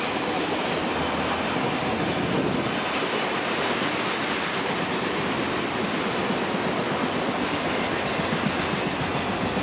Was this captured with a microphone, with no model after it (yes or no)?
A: yes